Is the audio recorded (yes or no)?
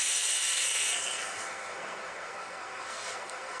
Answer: no